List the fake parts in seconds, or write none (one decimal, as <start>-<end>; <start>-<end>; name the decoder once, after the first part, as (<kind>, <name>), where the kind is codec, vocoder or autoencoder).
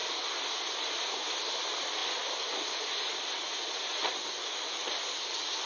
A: 4.4-4.9 (autoencoder, DAC-VAE)